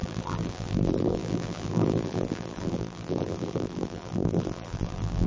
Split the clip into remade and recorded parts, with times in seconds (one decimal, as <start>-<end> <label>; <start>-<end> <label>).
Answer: 0.0-5.3 remade